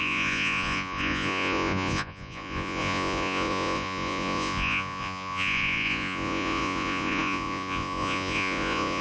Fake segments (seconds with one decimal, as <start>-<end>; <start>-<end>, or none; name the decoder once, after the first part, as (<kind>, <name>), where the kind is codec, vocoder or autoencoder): 0.0-9.0 (vocoder, Vocos)